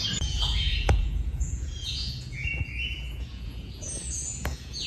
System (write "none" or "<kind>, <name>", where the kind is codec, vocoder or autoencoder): vocoder, Vocos